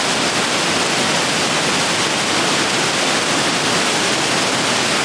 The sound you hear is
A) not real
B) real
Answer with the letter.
B